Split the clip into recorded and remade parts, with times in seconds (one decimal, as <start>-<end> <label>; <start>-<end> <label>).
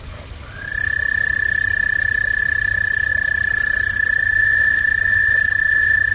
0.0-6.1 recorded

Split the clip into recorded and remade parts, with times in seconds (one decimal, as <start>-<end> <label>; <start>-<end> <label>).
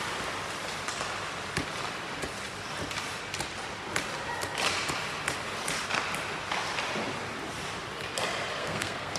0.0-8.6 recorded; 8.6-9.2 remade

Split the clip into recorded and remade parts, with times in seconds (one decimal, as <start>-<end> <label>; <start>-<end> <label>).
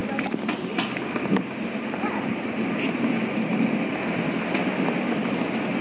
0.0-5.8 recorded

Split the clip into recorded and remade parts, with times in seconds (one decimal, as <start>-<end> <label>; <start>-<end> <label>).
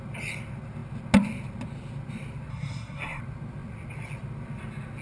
0.0-2.5 recorded; 2.5-3.2 remade; 3.2-5.0 recorded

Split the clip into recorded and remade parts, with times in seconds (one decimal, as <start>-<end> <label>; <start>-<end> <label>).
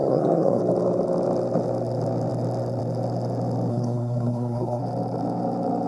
0.0-0.6 remade; 0.6-3.7 recorded; 3.7-4.8 remade; 4.8-5.9 recorded